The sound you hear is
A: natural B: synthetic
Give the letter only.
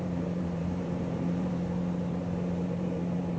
B